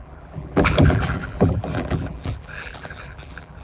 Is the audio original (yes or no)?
no